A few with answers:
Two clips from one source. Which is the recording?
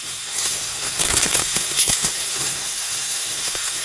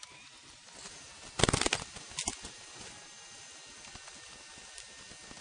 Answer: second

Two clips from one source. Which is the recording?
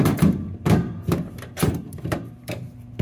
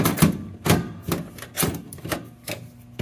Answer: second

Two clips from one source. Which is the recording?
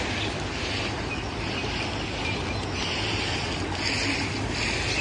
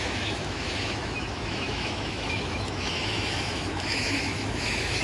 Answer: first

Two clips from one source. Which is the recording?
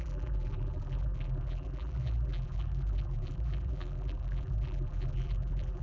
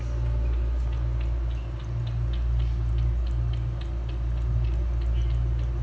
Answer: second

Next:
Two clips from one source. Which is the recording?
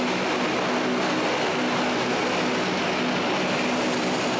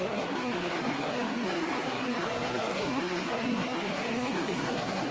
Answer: first